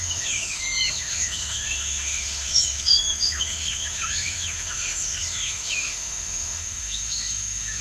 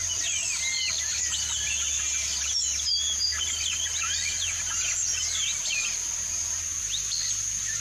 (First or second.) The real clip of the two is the second